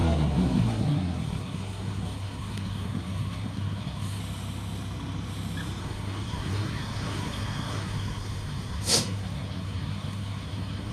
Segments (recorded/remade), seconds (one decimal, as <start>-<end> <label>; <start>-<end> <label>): 0.0-4.2 remade; 4.2-5.8 recorded; 5.8-10.9 remade